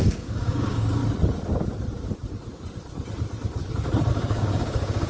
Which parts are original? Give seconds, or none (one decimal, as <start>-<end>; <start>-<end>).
1.0-4.1